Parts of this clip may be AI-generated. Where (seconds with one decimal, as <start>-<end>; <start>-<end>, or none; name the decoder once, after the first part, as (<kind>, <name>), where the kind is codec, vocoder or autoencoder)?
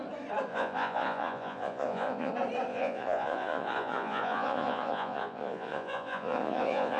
0.5-2.3 (vocoder, Vocos); 2.7-7.0